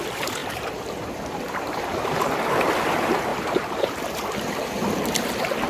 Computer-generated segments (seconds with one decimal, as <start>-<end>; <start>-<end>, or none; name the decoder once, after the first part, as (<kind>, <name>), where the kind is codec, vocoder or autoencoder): 0.4-2.3 (vocoder, BigVGAN v2); 3.3-4.0